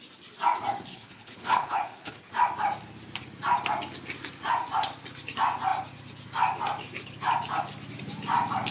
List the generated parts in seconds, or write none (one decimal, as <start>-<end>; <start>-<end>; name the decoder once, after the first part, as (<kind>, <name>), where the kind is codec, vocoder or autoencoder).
0.9-2.2 (codec, HILCodec)